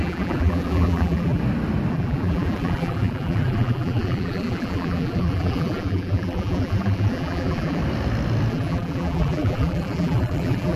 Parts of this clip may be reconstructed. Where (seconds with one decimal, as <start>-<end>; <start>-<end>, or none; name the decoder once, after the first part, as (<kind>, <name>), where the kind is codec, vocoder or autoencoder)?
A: 0.0-1.4 (vocoder, BigVGAN v2); 1.9-7.8; 8.5-10.8